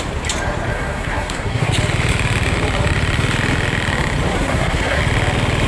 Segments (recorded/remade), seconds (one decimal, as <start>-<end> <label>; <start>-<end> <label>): 0.0-0.7 recorded; 0.7-1.7 remade; 1.7-4.3 recorded; 4.3-5.0 remade; 5.0-5.7 recorded